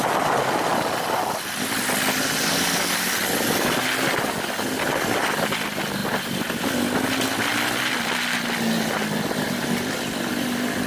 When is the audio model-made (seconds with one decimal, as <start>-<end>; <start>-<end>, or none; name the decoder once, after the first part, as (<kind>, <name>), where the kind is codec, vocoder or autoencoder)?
none